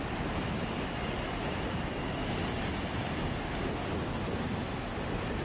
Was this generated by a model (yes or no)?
no